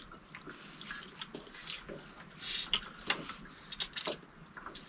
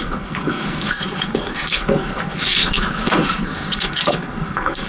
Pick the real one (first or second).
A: first